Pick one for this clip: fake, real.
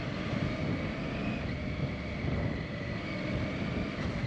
real